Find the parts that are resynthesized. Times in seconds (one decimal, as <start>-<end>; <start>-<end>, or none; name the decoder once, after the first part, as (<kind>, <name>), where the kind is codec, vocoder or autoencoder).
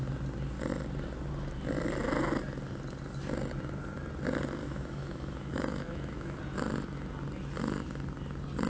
4.6-6.4 (autoencoder, DAC-VAE)